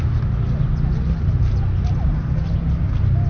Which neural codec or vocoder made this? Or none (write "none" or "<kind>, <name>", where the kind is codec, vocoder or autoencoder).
none